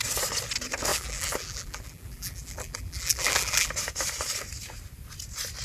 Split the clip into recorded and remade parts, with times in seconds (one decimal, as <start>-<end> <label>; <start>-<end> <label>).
0.0-0.9 recorded; 0.9-3.7 remade; 3.7-5.6 recorded